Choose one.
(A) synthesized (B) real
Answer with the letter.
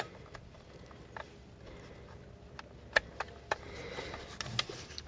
B